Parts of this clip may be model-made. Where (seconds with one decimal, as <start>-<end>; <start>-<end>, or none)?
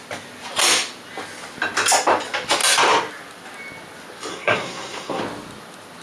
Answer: 4.3-5.2